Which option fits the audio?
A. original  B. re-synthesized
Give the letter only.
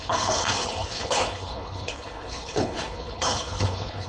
B